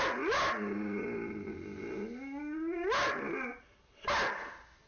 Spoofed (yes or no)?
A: no